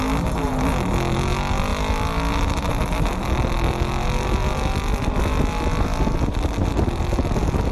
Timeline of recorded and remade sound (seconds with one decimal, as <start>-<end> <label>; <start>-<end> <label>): 0.0-7.7 recorded